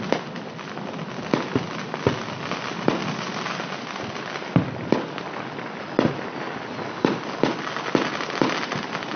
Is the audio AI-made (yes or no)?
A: no